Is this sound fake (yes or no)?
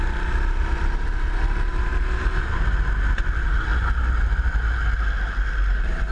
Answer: no